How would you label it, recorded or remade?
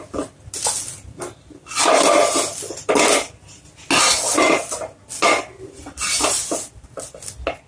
recorded